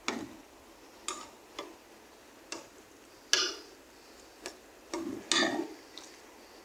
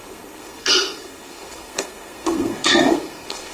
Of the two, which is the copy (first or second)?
second